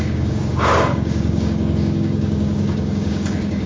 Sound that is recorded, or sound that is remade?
remade